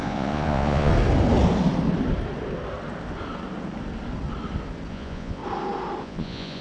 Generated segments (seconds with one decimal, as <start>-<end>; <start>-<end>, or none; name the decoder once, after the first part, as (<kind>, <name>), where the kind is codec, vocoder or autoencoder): 0.0-0.9 (vocoder, Vocos); 4.9-5.4; 6.0-6.6